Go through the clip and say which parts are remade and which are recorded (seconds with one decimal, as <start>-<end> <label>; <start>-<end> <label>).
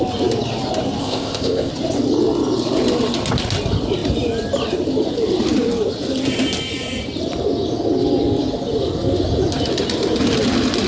0.0-1.0 recorded; 1.0-1.7 remade; 1.7-10.9 recorded